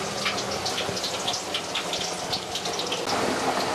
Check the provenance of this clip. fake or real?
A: real